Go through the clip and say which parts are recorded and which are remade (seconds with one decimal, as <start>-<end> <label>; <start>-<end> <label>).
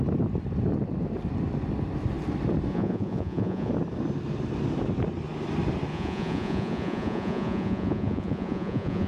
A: 0.0-2.7 recorded; 2.7-3.7 remade; 3.7-5.9 recorded; 5.9-9.1 remade